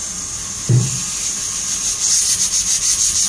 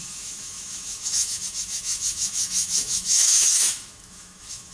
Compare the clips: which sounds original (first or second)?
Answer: first